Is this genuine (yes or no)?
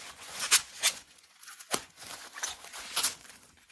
no